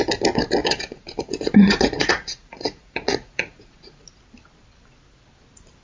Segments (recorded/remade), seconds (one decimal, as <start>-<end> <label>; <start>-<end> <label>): 0.0-0.6 recorded; 0.6-4.1 remade; 4.1-5.8 recorded